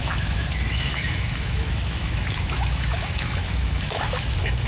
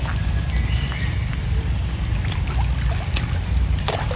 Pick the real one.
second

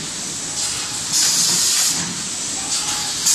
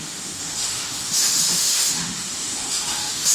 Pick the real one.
first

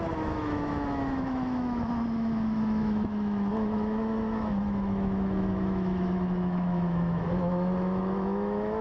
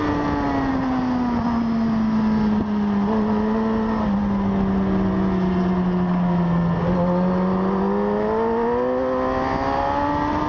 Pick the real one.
second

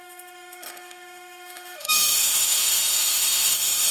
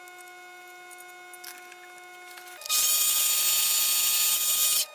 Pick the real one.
second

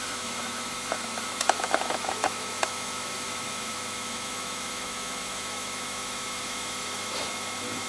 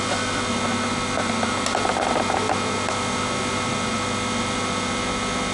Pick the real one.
second